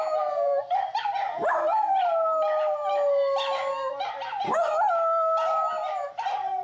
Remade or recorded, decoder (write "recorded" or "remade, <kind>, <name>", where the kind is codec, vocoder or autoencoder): recorded